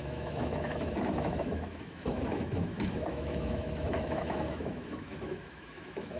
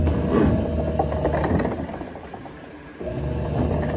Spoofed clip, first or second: first